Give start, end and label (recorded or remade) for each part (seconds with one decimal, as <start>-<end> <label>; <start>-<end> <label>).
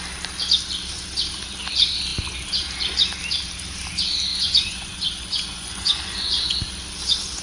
0.0-4.3 recorded; 4.3-6.6 remade; 6.6-7.4 recorded